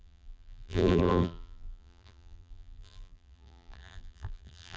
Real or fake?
fake